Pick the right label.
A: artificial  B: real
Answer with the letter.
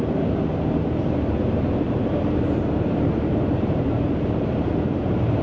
A